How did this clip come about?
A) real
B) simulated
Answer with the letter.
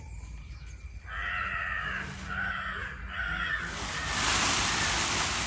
A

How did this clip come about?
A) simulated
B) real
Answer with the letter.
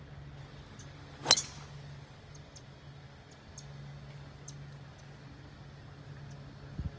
B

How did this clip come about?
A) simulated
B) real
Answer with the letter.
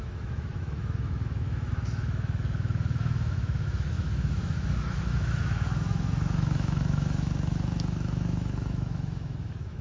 A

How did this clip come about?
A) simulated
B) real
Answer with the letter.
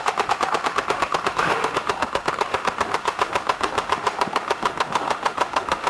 A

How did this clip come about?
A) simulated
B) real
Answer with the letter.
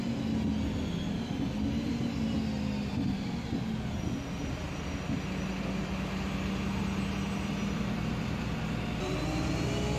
B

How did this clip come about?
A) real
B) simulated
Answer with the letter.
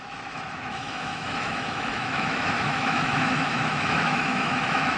B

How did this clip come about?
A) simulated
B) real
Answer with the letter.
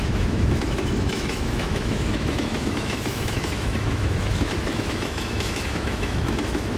A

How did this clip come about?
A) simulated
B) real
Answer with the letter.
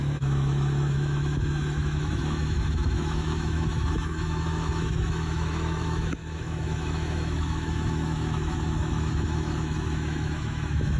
A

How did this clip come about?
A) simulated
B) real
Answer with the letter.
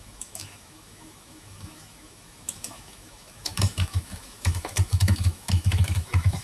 A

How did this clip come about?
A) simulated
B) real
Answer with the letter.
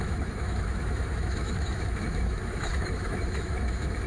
A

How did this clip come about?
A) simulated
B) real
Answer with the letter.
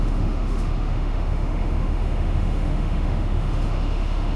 A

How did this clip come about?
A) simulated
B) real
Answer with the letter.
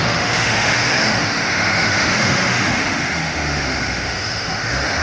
A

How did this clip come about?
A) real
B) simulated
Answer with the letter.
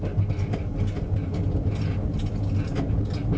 A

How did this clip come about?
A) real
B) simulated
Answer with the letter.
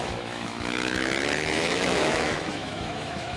B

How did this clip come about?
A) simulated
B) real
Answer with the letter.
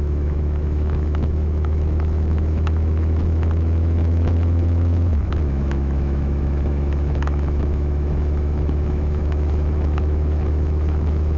A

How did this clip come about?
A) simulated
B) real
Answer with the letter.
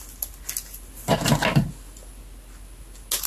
B